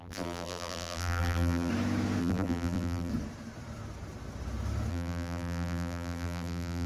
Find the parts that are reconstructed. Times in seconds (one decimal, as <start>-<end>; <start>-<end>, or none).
0.0-1.7; 2.2-3.1; 4.9-6.9